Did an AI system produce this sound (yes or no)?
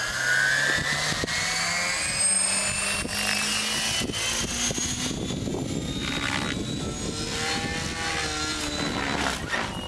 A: no